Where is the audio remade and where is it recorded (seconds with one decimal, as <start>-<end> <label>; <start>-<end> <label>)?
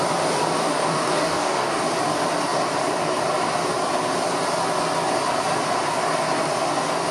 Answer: 0.0-0.6 recorded; 0.6-1.8 remade; 1.8-7.1 recorded